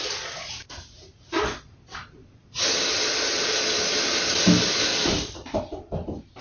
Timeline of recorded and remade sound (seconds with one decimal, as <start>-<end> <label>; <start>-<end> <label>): 0.0-4.9 recorded; 4.9-5.6 remade; 5.6-6.4 recorded